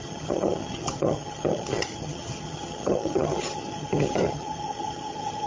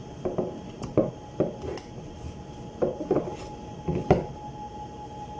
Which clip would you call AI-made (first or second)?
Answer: first